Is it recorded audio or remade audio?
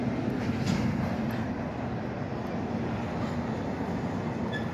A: recorded